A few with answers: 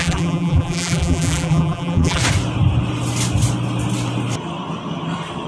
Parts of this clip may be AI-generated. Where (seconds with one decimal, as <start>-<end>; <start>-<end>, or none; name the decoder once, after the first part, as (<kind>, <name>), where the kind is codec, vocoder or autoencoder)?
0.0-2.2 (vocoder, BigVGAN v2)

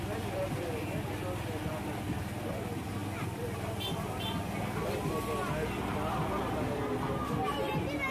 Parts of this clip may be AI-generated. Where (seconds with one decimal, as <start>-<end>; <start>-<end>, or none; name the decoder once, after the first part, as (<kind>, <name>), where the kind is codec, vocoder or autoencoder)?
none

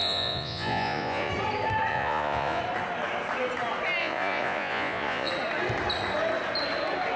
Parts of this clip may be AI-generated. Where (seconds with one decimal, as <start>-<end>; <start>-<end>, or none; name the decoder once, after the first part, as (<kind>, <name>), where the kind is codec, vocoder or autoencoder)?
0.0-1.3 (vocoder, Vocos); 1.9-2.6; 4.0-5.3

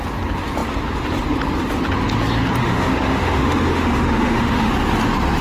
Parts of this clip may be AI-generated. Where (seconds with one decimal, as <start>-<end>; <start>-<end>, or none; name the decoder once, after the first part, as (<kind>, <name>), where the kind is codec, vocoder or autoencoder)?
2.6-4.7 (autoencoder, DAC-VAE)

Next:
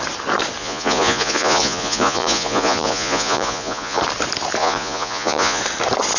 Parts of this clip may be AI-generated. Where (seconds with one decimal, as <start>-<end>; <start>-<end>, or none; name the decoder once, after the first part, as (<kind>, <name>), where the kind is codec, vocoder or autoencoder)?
0.6-4.0 (vocoder, Vocos); 4.6-5.6

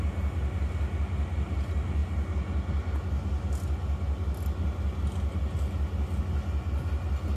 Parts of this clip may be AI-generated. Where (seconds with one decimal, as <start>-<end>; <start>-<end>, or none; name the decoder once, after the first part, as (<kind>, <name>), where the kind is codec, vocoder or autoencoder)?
none